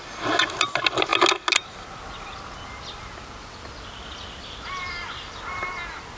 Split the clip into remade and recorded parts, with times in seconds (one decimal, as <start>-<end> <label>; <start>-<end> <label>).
0.0-6.2 recorded